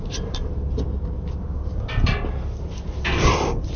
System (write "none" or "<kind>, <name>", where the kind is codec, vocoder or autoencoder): none